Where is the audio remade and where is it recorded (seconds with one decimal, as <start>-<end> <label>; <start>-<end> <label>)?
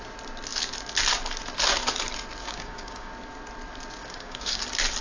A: 0.0-2.4 recorded; 2.4-3.1 remade; 3.1-4.0 recorded; 4.0-4.6 remade; 4.6-5.0 recorded